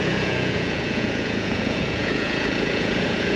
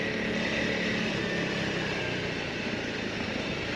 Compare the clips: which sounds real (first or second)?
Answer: second